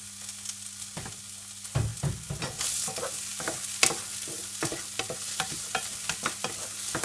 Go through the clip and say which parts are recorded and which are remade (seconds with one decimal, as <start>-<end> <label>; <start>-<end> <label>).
0.0-7.0 recorded